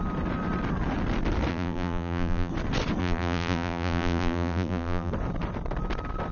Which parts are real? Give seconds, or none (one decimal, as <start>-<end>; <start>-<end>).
0.0-1.5; 2.5-3.0; 5.1-6.3